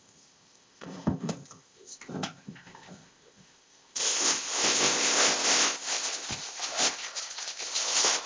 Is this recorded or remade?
remade